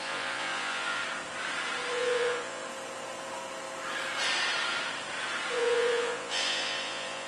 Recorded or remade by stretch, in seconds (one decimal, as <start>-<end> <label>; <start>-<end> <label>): 0.0-1.0 remade; 1.0-1.9 recorded; 1.9-2.6 remade; 2.6-5.5 recorded; 5.5-7.3 remade